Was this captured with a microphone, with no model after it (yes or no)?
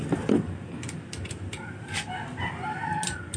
yes